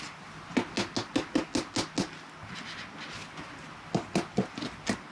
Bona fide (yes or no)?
yes